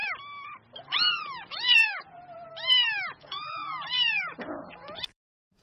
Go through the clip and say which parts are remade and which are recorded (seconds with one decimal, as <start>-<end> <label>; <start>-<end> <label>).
0.0-0.8 recorded; 0.8-2.5 remade; 2.5-3.1 recorded; 3.1-5.6 remade